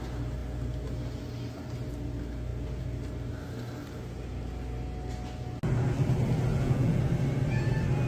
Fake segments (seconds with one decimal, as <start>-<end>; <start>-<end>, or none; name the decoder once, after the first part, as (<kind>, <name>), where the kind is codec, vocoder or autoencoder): 6.5-7.0 (vocoder, Vocos)